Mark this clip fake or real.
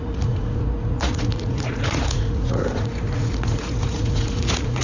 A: fake